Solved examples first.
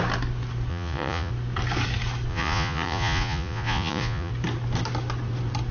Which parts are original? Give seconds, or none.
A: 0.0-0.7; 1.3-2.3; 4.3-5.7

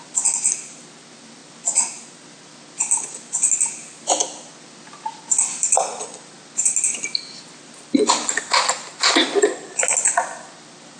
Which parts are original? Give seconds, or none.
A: 0.0-11.0